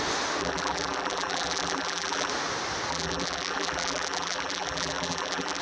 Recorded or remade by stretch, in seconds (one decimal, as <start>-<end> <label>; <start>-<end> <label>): 0.0-0.4 recorded; 0.4-2.3 remade; 2.3-2.9 recorded; 2.9-5.6 remade